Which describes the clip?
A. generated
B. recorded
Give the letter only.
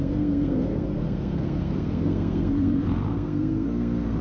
A